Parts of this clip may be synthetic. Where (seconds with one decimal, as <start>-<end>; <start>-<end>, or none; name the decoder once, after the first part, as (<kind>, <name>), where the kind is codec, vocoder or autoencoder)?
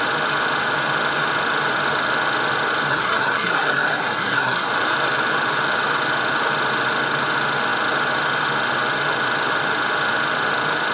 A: 2.9-4.7 (codec, SNAC)